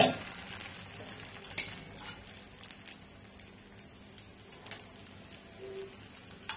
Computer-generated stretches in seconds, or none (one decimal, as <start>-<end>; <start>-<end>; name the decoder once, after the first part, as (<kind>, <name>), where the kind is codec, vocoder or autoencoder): none